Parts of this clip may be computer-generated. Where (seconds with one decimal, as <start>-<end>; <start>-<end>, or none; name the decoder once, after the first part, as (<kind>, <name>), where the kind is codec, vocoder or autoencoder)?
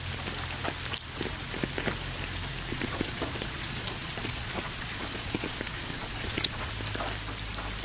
2.7-6.7 (vocoder, Vocos)